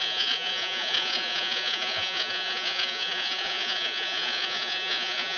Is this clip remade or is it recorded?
remade